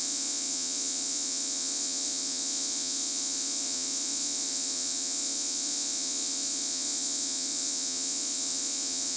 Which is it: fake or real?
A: fake